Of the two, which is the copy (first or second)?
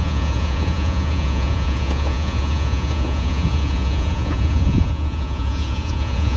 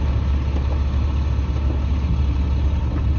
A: first